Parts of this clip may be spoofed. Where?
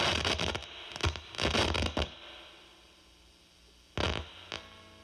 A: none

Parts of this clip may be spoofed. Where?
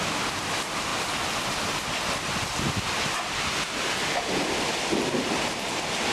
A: none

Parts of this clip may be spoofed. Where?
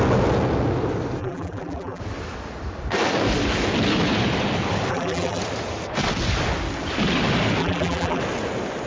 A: 1.2-2.0 (vocoder, BigVGAN v2); 4.9-5.4; 7.6-8.2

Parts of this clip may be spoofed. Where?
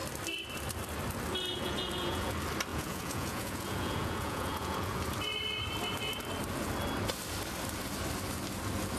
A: 1.5-2.3 (vocoder, Vocos); 2.7-5.0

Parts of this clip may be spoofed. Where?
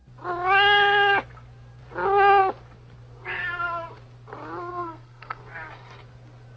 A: 4.7-5.4 (codec, SNAC)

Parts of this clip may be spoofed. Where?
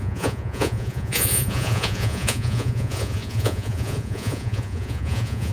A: 0.0-5.5 (vocoder, Vocos)